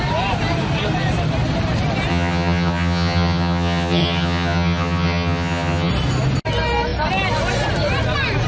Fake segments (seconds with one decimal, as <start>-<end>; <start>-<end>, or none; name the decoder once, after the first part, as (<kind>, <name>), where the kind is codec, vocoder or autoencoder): 2.1-5.9 (vocoder, HiFi-GAN)